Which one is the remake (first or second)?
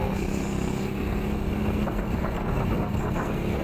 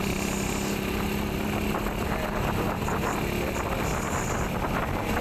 first